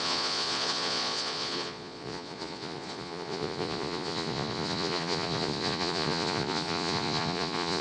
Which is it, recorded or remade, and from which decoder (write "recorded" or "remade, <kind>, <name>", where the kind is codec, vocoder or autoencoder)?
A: remade, vocoder, Vocos